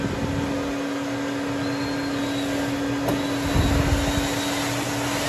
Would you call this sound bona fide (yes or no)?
yes